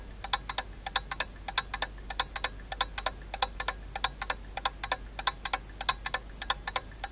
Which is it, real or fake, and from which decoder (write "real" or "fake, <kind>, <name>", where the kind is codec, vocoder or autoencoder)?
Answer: real